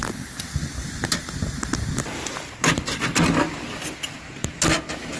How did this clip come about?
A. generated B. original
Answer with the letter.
B